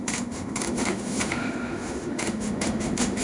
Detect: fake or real fake